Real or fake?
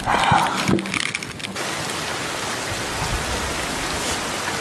real